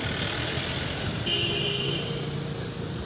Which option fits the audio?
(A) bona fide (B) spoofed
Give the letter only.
A